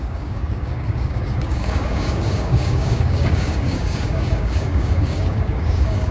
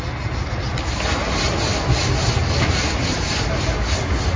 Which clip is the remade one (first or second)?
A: first